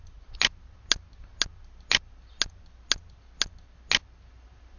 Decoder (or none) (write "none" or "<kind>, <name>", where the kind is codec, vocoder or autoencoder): none